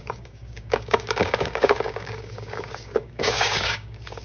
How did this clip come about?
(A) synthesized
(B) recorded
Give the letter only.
A